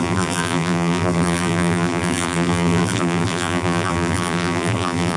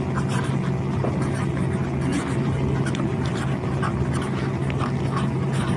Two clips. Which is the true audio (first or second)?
second